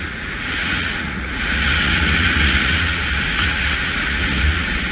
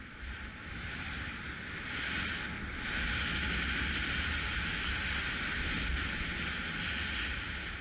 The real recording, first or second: second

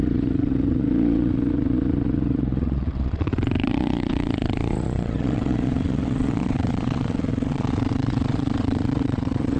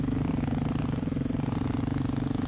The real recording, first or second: second